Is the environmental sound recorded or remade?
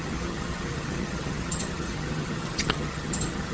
remade